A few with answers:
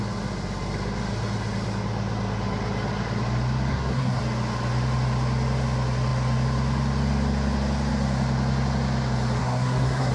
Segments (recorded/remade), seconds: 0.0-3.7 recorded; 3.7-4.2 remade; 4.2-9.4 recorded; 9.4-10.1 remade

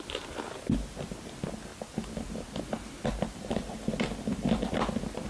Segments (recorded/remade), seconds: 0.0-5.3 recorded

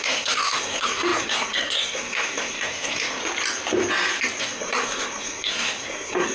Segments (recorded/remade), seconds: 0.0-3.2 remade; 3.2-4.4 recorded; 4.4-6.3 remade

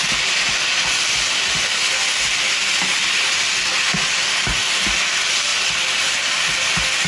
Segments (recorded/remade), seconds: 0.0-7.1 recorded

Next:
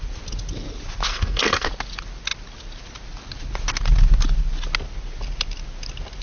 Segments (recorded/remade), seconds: 0.0-1.1 recorded; 1.1-1.7 remade; 1.7-6.2 recorded

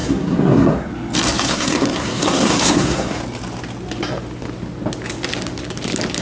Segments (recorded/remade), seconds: 0.0-0.9 remade; 0.9-1.5 recorded; 1.5-3.2 remade; 3.2-6.2 recorded

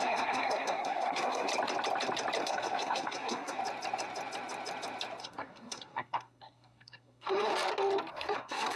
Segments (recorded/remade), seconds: 0.0-1.5 remade; 1.5-2.4 recorded; 2.4-3.6 remade; 3.6-5.2 recorded; 5.2-7.5 remade; 7.5-8.1 recorded; 8.1-8.8 remade

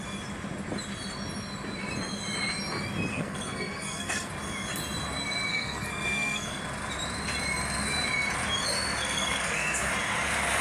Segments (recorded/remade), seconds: 0.0-3.1 recorded; 3.1-4.3 remade; 4.3-5.5 recorded; 5.5-6.6 remade; 6.6-9.0 recorded; 9.0-9.9 remade; 9.9-10.6 recorded